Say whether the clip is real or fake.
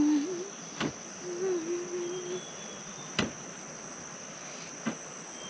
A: real